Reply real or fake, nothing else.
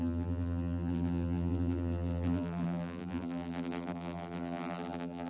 fake